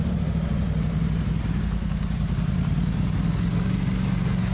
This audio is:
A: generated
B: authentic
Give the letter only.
B